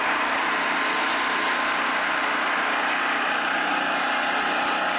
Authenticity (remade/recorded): recorded